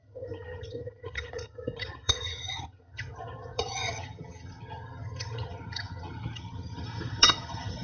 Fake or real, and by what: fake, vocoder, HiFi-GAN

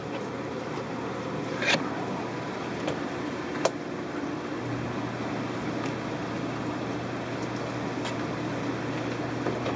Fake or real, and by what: real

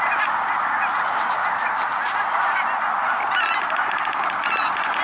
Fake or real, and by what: real